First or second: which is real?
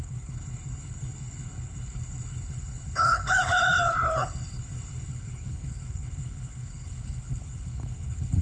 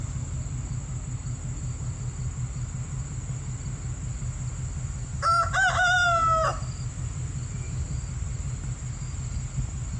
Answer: second